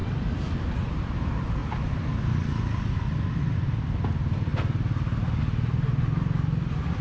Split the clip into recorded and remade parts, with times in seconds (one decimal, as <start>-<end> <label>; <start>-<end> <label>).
0.0-7.0 recorded